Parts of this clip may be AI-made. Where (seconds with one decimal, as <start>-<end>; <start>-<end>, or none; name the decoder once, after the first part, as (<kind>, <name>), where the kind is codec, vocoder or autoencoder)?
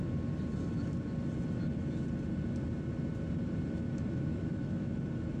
4.3-4.9 (autoencoder, DAC-VAE)